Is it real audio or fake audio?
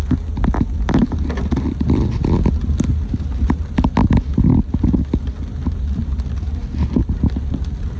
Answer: real